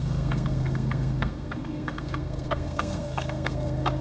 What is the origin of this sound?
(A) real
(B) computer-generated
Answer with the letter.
B